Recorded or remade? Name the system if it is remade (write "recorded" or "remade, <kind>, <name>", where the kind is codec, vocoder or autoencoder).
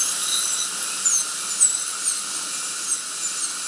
recorded